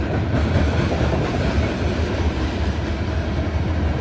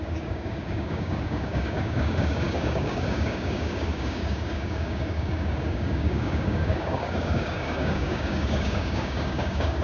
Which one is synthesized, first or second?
second